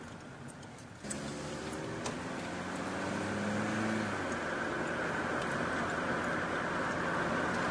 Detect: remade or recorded recorded